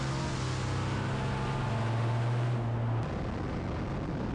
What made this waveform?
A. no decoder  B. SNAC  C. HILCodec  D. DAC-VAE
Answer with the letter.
A